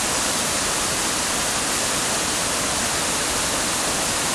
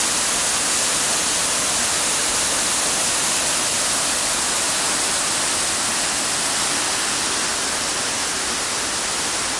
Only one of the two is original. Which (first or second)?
second